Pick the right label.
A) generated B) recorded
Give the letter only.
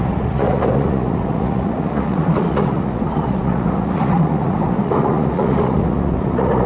A